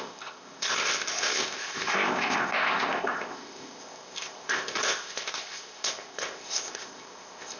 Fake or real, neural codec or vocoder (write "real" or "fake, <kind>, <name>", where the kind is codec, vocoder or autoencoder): fake, codec, ZipCodec